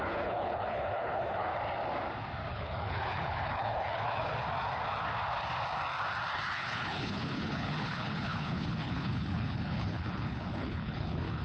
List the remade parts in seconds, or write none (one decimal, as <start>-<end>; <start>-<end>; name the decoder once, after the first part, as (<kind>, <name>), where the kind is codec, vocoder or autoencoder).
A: 0.0-1.5 (codec, HILCodec); 2.5-4.3; 6.5-11.4